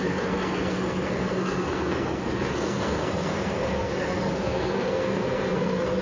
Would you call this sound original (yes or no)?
no